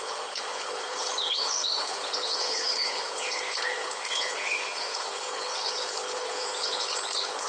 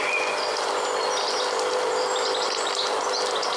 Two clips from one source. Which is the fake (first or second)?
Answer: first